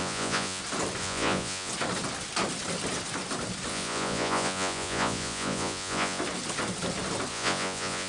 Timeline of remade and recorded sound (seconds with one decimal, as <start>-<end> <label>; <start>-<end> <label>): 0.0-0.6 remade; 0.6-1.0 recorded; 1.0-1.7 remade; 1.7-3.7 recorded; 3.7-6.2 remade; 6.2-7.3 recorded; 7.3-8.1 remade